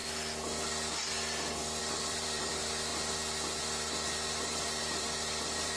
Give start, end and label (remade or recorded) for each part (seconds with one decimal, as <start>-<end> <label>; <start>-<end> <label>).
0.0-1.8 recorded; 1.8-2.5 remade; 2.5-4.8 recorded; 4.8-5.8 remade